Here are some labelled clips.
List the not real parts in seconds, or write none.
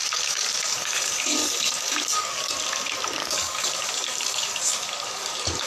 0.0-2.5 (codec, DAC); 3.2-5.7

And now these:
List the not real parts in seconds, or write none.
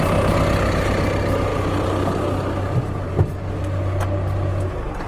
none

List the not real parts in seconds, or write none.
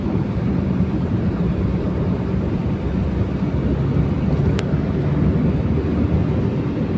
0.0-2.6 (vocoder, BigVGAN v2)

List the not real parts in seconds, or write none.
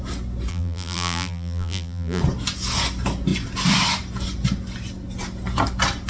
0.5-2.2 (vocoder, BigVGAN v2)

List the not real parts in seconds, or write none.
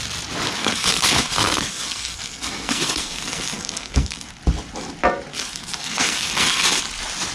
0.6-4.3 (codec, SNAC); 5.3-6.8